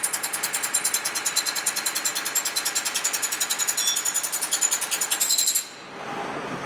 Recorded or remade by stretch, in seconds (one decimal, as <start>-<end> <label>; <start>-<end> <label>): 0.0-6.7 recorded